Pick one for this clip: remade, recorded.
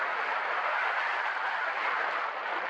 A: recorded